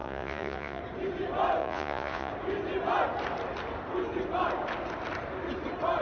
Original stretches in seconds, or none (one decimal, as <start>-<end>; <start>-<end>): 0.8-1.6; 2.3-6.0